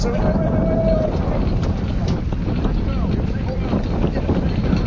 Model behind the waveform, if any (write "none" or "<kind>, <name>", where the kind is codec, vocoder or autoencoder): none